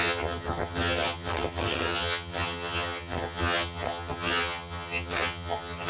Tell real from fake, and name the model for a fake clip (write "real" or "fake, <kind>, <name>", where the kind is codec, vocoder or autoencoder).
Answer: fake, vocoder, HiFi-GAN